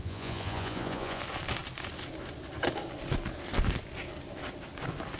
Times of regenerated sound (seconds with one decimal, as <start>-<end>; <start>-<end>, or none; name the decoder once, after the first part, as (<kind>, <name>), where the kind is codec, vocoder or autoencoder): 0.0-1.2 (vocoder, Vocos)